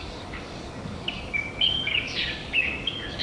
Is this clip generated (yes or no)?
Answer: yes